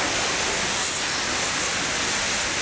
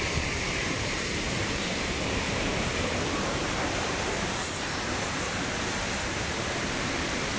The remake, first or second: second